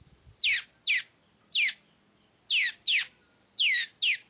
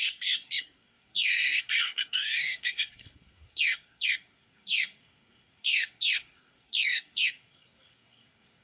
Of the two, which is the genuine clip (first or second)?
first